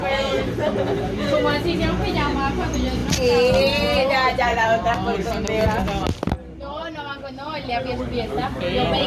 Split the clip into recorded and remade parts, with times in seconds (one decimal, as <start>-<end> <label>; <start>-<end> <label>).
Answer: 0.0-4.5 recorded; 4.5-5.3 remade; 5.3-9.1 recorded